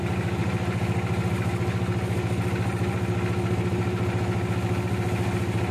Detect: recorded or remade recorded